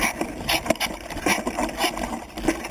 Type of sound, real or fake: real